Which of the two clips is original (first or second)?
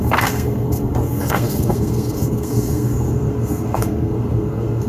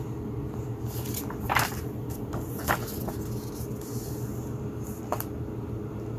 second